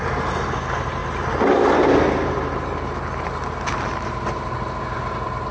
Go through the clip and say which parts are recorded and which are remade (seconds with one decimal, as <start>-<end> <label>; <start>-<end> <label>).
0.0-5.5 recorded